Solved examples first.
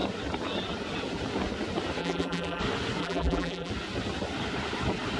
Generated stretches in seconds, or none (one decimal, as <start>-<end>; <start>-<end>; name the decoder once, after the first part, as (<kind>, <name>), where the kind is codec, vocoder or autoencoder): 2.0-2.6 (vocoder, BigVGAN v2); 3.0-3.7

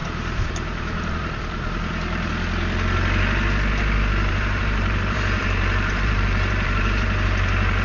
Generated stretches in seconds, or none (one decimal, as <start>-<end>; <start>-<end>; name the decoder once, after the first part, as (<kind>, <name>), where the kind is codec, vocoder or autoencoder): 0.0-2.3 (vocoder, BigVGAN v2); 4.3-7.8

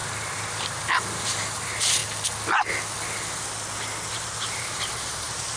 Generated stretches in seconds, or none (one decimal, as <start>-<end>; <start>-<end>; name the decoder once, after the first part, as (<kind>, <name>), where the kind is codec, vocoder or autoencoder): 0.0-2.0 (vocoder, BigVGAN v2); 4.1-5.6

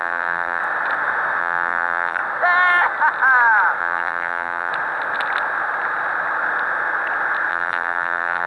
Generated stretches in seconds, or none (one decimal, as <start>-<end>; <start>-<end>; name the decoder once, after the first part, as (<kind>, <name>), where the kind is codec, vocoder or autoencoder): 0.0-0.6 (vocoder, BigVGAN v2); 1.4-2.2; 3.8-4.7; 7.5-8.5